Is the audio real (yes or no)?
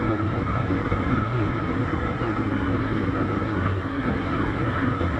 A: no